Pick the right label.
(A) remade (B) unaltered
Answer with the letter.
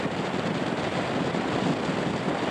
B